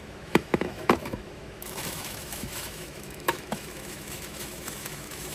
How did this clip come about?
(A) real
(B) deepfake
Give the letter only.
B